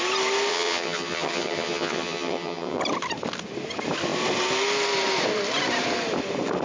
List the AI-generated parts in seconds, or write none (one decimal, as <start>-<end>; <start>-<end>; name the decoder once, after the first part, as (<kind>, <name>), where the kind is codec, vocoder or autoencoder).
0.5-2.8 (vocoder, HiFi-GAN)

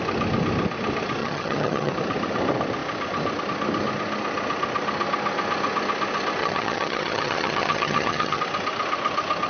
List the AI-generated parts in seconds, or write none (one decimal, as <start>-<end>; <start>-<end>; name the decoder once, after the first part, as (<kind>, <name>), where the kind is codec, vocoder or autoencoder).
1.2-1.9 (vocoder, HiFi-GAN); 6.4-8.4

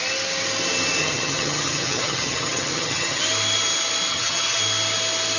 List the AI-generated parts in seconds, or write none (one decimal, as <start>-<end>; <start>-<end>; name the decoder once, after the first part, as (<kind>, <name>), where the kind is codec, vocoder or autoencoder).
1.0-3.2 (vocoder, HiFi-GAN); 4.1-4.6

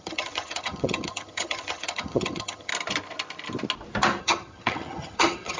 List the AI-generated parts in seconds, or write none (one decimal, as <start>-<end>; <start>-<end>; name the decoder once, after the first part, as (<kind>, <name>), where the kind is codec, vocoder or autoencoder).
0.0-2.7 (vocoder, HiFi-GAN); 4.2-5.6